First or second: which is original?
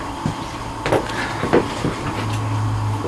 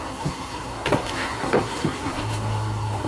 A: first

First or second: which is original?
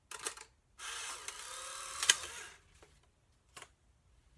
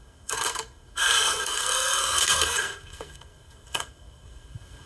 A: first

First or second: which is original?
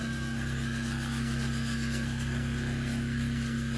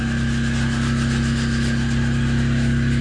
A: second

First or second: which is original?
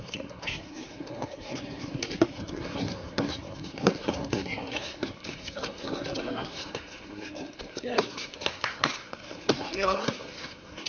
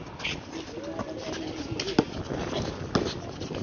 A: second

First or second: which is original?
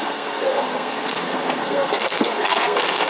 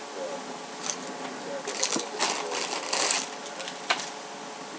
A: second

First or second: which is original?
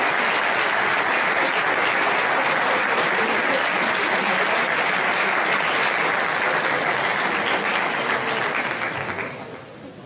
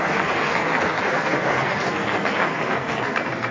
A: first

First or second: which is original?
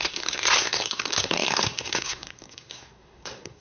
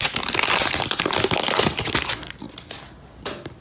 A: second